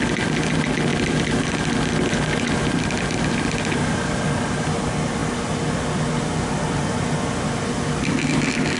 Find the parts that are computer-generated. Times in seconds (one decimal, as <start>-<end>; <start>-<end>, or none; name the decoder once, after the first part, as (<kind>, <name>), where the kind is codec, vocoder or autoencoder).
none